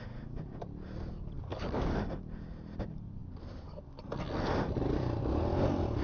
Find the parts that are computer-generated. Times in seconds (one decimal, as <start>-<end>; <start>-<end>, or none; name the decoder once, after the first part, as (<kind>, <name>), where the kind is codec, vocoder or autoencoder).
1.5-2.0 (codec, DAC)